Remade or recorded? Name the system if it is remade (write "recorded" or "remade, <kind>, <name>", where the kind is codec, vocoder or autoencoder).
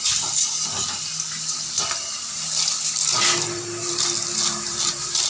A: recorded